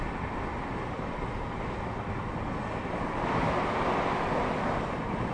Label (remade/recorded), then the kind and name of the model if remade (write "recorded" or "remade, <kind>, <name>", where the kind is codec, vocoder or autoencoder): recorded